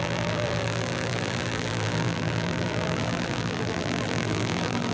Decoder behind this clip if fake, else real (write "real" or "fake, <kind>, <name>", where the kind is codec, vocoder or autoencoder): fake, vocoder, BigVGAN v2